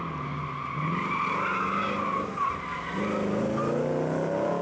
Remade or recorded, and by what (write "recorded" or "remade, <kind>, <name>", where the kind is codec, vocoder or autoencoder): recorded